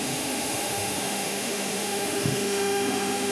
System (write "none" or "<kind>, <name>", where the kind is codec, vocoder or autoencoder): autoencoder, DAC-VAE